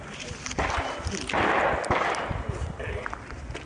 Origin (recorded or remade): recorded